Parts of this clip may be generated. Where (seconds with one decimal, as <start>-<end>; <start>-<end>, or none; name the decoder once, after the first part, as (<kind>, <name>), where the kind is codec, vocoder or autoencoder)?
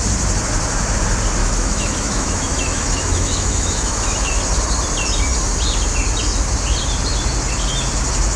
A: 1.4-4.4 (autoencoder, DAC-VAE)